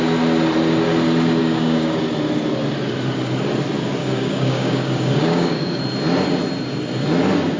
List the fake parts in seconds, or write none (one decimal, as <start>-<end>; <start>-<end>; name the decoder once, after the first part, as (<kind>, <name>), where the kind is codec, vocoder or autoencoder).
1.4-2.0 (codec, DAC); 4.0-5.8